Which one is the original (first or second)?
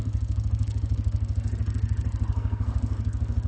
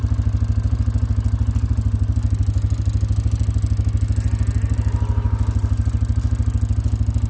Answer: second